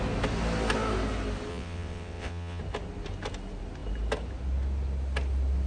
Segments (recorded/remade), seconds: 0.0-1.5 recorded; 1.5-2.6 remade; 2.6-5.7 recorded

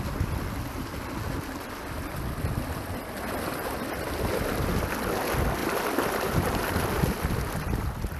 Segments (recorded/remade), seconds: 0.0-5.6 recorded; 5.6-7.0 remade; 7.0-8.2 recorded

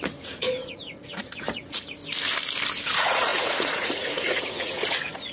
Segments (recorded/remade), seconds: 0.0-2.0 remade; 2.0-2.8 recorded; 2.8-5.3 remade